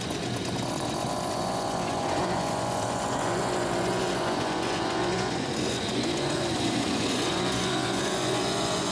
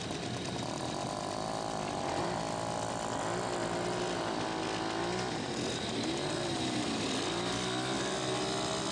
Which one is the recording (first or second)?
second